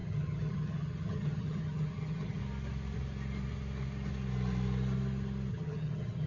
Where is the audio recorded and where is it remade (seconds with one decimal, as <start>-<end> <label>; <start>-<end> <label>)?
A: 0.0-2.4 remade; 2.4-5.5 recorded; 5.5-6.3 remade